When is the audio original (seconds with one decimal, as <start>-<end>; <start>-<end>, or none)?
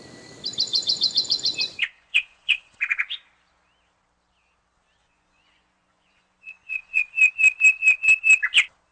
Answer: 0.0-0.7; 3.3-5.0; 7.0-8.9